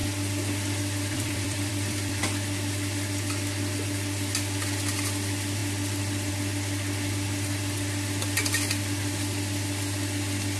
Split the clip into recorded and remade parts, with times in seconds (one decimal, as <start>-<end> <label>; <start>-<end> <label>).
0.0-2.2 remade; 2.2-10.6 recorded